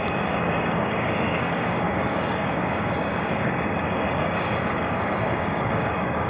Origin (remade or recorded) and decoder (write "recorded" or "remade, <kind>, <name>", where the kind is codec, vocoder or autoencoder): remade, codec, DAC